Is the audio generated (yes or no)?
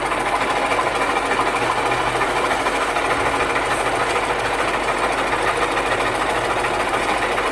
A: no